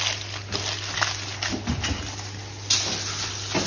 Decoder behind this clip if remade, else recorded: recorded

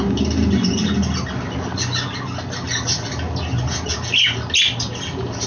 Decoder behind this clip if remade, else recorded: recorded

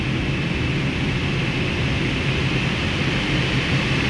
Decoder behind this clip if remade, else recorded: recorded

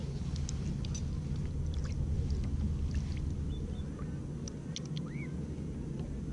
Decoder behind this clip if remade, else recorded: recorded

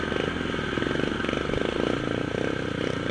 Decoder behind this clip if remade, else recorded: recorded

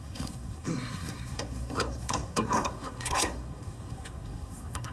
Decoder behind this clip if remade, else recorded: remade, codec, SNAC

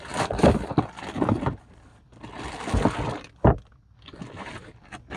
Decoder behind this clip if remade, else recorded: remade, vocoder, BigVGAN v2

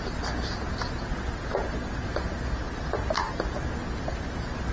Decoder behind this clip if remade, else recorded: recorded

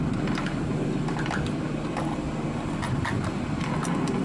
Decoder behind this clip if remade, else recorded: recorded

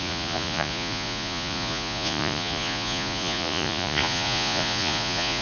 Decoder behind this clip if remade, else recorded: remade, vocoder, Vocos